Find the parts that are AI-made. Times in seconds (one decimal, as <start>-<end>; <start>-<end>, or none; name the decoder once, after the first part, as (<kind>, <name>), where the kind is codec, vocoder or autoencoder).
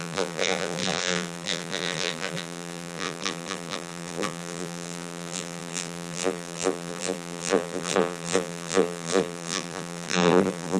0.0-10.8 (vocoder, BigVGAN v2)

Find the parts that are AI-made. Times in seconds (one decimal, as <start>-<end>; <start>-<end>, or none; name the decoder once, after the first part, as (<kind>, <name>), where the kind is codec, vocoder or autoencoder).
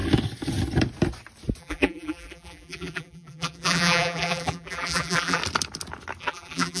1.6-5.4 (vocoder, BigVGAN v2); 6.2-6.8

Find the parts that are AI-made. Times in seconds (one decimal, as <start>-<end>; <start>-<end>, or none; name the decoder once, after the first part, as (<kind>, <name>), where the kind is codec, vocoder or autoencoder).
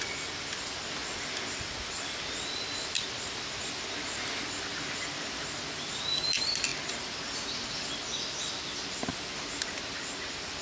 none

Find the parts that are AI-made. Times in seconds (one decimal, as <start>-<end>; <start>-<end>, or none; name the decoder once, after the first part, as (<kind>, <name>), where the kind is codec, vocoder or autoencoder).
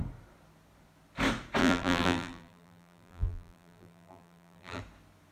1.6-4.8 (vocoder, BigVGAN v2)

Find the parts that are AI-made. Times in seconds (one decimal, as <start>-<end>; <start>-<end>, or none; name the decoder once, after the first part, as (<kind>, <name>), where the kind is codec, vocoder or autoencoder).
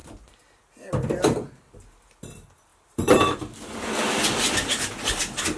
2.7-3.4 (vocoder, BigVGAN v2)